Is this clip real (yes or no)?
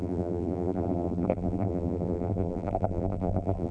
no